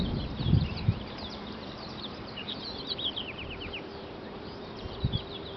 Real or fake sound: fake